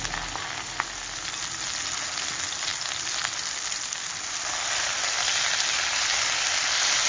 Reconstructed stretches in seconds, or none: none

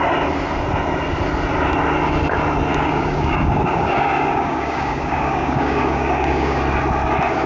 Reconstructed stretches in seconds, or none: 2.7-6.6 (codec, DAC)

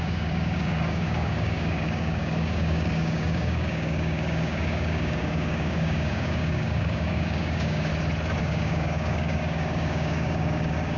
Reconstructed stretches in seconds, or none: 0.0-7.9 (codec, DAC); 8.4-11.0

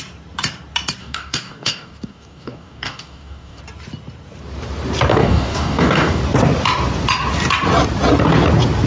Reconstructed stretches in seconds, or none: 1.0-3.6 (codec, DAC); 5.1-6.2

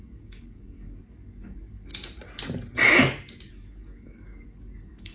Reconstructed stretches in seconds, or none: 0.0-1.9 (codec, DAC); 3.5-5.1

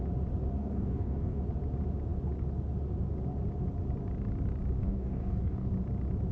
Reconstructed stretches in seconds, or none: 0.6-1.4 (codec, DAC); 4.8-5.7